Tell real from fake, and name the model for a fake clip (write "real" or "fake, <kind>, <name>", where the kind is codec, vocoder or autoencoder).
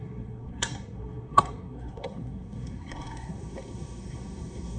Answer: fake, codec, SNAC